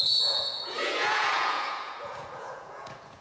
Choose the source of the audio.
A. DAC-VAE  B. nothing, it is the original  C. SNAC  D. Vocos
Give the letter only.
D